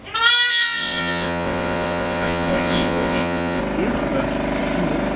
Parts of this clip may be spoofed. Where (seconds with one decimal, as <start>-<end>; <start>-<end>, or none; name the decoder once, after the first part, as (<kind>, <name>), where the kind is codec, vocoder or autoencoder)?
0.5-3.6 (vocoder, WaveNeXt)